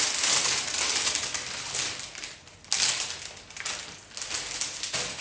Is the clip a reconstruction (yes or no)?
no